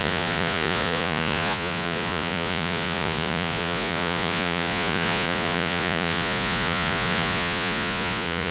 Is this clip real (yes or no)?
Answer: no